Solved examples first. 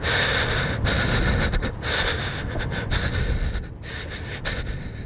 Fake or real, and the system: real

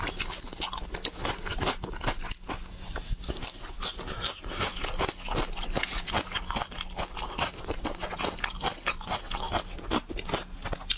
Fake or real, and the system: real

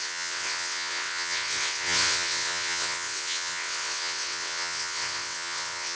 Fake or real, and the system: fake, vocoder, WaveNeXt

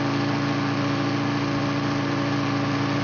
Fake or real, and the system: real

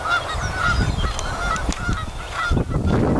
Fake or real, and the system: real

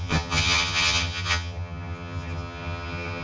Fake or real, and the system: fake, vocoder, HiFi-GAN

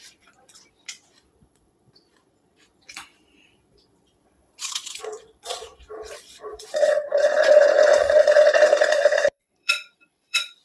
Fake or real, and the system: fake, vocoder, Vocos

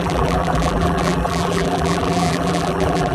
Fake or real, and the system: fake, vocoder, BigVGAN v2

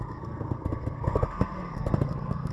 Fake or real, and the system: fake, codec, SNAC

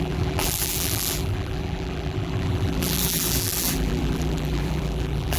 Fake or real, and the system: fake, vocoder, BigVGAN v2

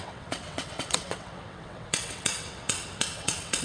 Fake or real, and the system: fake, vocoder, WaveNeXt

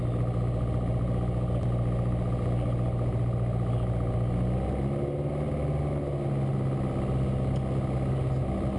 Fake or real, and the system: real